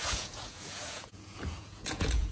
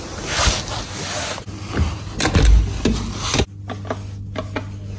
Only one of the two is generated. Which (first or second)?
first